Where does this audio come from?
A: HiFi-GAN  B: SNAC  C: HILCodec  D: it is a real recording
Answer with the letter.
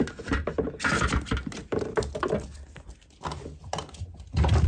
D